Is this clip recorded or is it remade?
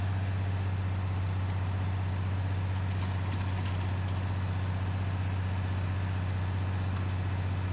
recorded